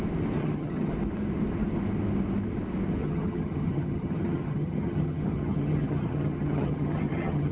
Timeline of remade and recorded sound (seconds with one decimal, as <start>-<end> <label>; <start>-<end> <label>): 0.0-0.4 recorded; 0.4-0.9 remade; 0.9-3.0 recorded; 3.0-7.5 remade